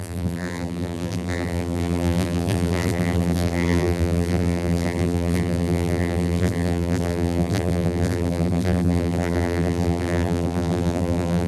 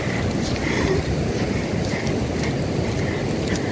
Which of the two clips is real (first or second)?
second